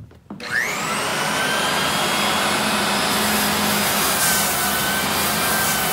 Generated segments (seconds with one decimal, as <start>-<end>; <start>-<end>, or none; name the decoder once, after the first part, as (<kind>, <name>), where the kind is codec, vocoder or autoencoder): none